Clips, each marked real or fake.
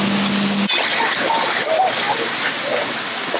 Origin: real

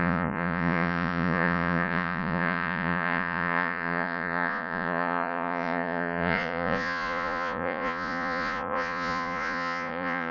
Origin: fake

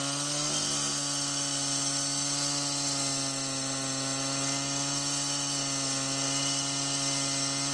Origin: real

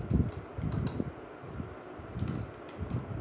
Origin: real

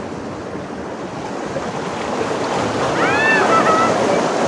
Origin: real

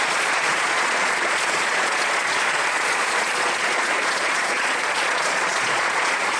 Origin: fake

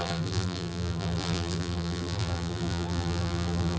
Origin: fake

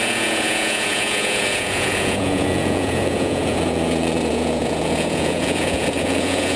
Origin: fake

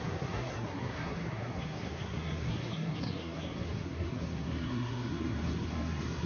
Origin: fake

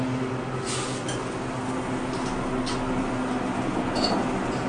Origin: real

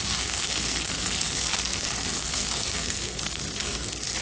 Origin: fake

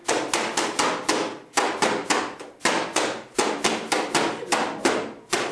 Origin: real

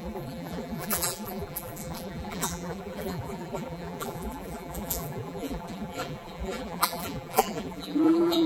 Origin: fake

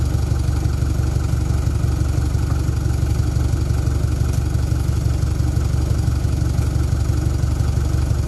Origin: real